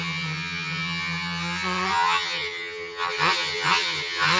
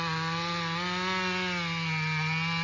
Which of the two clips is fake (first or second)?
first